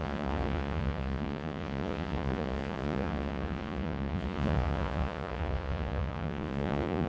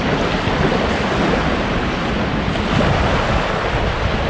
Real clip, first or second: second